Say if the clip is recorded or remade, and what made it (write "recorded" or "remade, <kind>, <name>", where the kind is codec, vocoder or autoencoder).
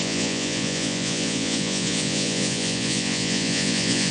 remade, vocoder, Vocos